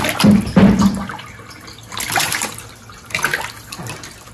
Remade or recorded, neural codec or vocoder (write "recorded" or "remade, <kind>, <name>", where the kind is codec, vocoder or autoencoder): recorded